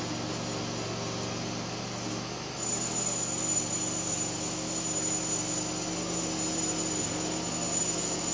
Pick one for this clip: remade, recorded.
recorded